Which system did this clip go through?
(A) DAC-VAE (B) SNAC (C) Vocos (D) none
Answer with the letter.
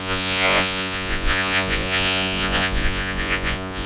C